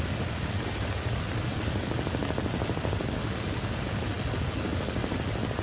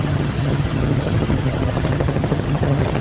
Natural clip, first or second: first